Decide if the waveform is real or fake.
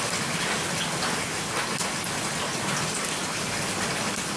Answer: real